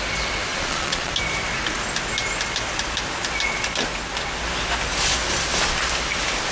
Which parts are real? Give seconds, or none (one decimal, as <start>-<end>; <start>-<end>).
0.0-0.5; 1.1-6.5